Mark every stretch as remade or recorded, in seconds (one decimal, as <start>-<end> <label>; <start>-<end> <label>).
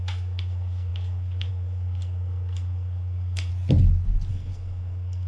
0.0-3.5 remade; 3.5-4.3 recorded; 4.3-5.3 remade